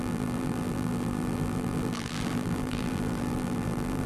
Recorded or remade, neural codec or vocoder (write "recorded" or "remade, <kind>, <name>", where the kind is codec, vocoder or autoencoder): remade, vocoder, BigVGAN v2